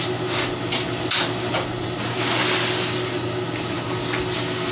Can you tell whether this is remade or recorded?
recorded